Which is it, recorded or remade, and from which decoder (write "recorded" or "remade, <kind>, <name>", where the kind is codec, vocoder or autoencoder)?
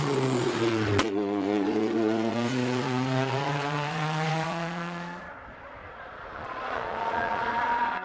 remade, vocoder, Vocos